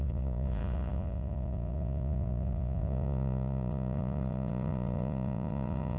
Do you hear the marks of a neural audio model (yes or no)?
yes